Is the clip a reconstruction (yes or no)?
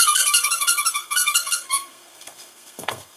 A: yes